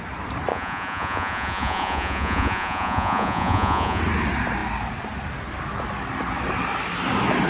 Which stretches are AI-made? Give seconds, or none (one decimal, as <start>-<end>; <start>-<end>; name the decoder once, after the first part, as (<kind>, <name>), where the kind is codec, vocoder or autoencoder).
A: 0.5-4.0 (vocoder, Vocos)